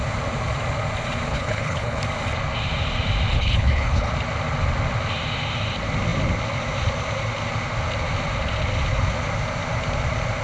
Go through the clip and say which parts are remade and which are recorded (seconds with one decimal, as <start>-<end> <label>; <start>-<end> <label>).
0.0-1.3 recorded; 1.3-2.0 remade; 2.0-3.3 recorded; 3.3-4.1 remade; 4.1-10.4 recorded